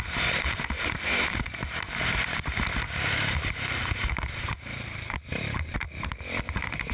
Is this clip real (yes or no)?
no